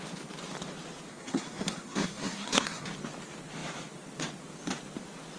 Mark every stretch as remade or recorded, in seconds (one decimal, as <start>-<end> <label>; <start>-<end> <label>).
0.0-1.1 recorded; 1.1-2.9 remade; 2.9-5.4 recorded